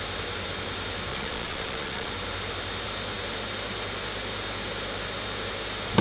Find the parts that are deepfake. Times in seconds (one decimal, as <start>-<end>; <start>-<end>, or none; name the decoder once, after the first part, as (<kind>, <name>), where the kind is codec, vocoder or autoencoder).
1.1-2.1 (vocoder, Vocos)